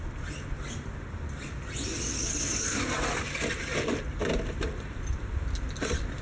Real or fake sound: real